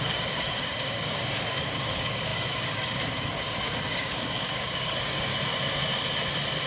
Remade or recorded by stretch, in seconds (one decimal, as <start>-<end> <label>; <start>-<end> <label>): 0.0-5.3 remade; 5.3-6.7 recorded